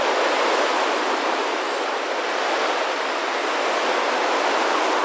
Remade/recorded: recorded